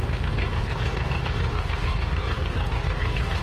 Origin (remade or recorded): remade